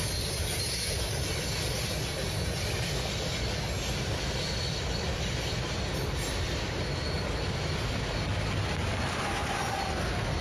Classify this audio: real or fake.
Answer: real